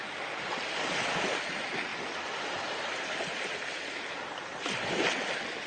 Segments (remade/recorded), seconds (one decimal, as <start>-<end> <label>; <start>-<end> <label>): 0.0-5.7 recorded